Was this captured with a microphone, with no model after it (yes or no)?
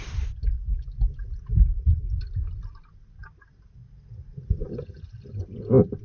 yes